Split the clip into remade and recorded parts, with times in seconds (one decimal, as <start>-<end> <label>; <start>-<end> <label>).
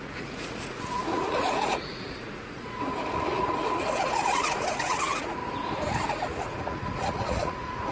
0.0-5.4 remade; 5.4-6.0 recorded; 6.0-7.9 remade